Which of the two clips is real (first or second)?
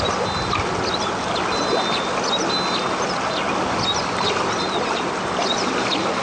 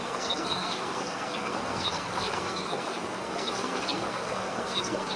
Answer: first